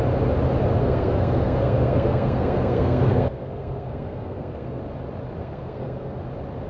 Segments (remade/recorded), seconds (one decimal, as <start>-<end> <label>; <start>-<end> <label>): 0.0-0.8 recorded; 0.8-4.8 remade; 4.8-5.4 recorded; 5.4-6.2 remade; 6.2-6.7 recorded